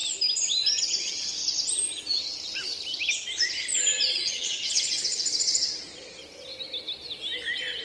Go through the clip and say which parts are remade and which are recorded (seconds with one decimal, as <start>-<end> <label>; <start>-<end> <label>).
0.0-1.0 recorded; 1.0-1.4 remade; 1.4-4.1 recorded; 4.1-6.2 remade; 6.2-7.8 recorded